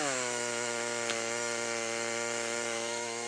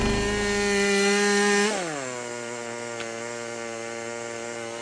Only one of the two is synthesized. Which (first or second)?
first